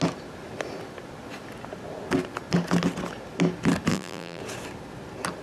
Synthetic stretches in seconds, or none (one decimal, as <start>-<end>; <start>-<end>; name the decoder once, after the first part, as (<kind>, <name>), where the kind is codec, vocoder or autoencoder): 3.9-4.4 (vocoder, BigVGAN v2)